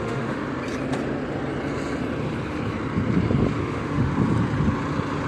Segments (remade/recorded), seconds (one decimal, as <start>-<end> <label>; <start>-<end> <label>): 0.0-0.4 remade; 0.4-3.6 recorded; 3.6-4.1 remade; 4.1-5.3 recorded

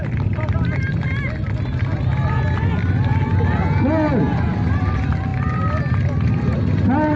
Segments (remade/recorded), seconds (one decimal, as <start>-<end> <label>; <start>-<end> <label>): 0.0-7.2 recorded